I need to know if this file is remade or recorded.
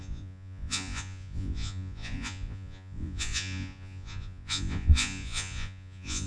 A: remade